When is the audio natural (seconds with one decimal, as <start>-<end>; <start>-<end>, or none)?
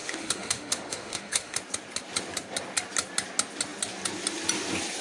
1.6-5.0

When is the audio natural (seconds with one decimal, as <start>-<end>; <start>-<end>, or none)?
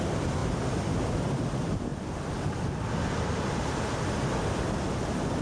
0.0-5.4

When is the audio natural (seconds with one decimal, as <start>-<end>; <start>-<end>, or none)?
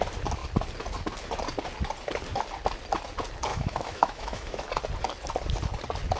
0.0-3.5; 4.7-6.2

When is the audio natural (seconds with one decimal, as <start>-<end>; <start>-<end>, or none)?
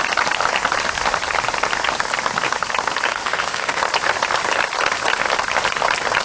0.0-3.1; 3.8-6.2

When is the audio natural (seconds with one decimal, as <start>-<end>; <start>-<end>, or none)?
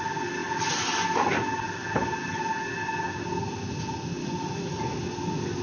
0.0-4.2; 4.8-5.6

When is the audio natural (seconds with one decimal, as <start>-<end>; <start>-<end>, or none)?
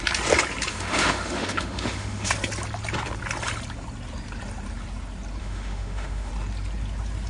0.0-0.7; 2.3-5.4; 6.3-7.3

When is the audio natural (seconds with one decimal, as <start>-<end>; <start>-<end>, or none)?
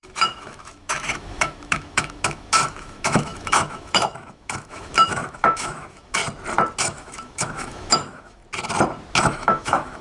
6.2-6.8; 8.4-9.2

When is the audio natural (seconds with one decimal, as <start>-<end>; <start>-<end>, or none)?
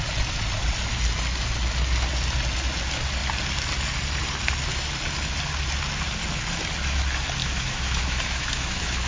0.0-7.4